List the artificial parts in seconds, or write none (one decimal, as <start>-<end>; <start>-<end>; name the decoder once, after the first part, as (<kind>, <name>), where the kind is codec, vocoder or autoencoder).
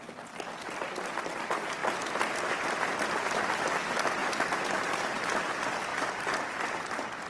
none